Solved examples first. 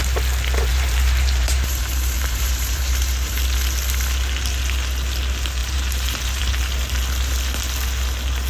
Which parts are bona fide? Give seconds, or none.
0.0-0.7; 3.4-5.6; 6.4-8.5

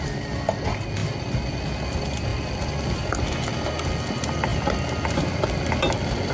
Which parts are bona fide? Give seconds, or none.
0.0-2.3; 3.1-6.3

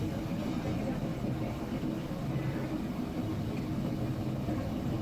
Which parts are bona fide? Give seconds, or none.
0.0-5.0

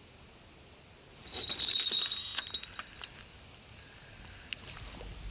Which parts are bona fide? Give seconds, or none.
0.0-1.1; 1.8-5.3

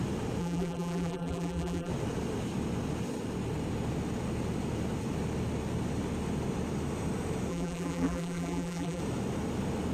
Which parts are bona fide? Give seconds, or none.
0.0-0.4; 1.9-7.5; 9.0-9.9

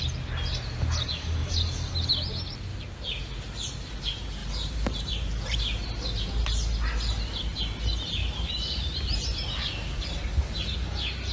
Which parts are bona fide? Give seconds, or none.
0.0-2.7; 3.2-4.4; 6.4-8.2; 9.7-11.3

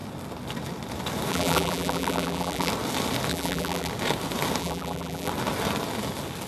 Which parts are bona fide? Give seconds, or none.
0.0-1.3; 2.7-3.3; 3.9-4.6; 5.3-6.5

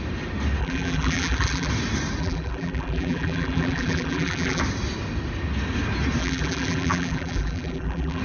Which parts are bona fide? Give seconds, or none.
0.0-0.6; 1.7-2.2; 4.6-6.2